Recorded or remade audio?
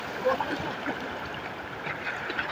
remade